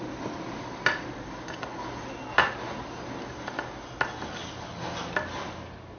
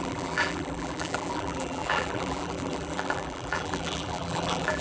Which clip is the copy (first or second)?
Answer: second